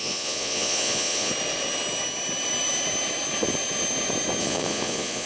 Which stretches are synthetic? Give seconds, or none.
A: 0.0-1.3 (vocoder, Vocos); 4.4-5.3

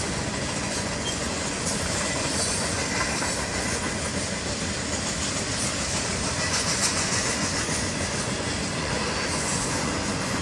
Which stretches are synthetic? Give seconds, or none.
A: 0.0-2.8 (vocoder, Vocos); 3.5-4.3; 6.5-10.4

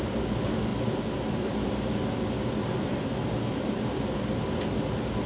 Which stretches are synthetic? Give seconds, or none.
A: none

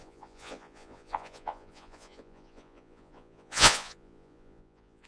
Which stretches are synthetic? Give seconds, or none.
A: 0.0-5.1 (vocoder, Vocos)

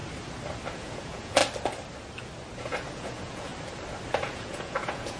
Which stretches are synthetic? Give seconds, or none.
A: 0.7-1.4 (vocoder, Vocos); 2.6-3.5; 4.2-5.2

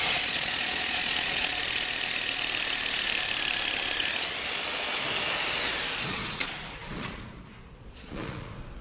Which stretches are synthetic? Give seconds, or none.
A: 0.0-1.5 (vocoder, Vocos); 6.0-8.8